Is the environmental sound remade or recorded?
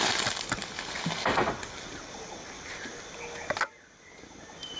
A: recorded